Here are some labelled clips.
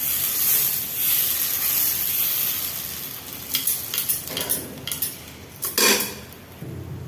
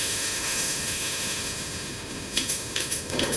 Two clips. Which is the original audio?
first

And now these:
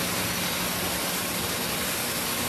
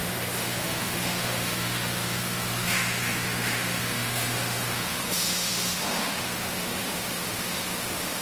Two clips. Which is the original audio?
first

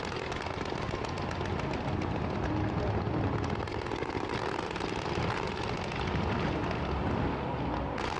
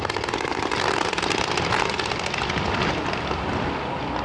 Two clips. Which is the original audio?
first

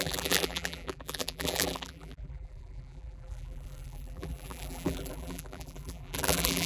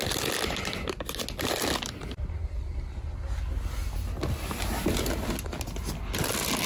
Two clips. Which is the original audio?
second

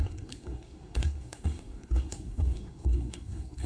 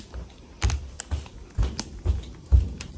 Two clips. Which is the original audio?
second